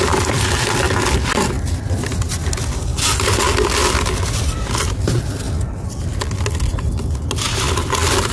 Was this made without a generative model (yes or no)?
yes